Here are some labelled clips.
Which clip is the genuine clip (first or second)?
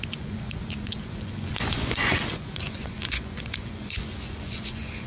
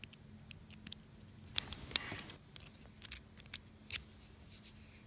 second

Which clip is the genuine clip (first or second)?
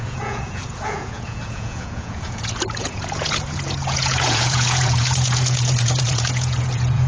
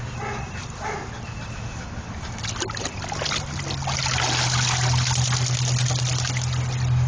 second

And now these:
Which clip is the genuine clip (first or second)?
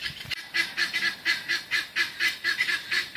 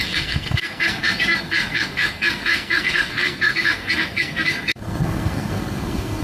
first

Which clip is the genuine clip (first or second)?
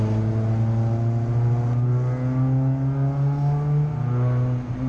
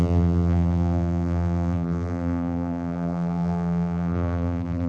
first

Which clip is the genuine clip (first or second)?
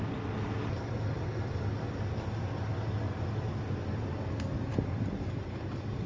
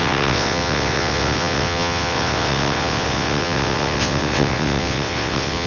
first